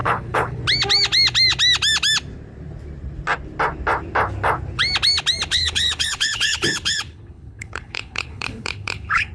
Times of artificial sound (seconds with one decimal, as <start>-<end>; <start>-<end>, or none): 0.0-0.6; 5.5-9.3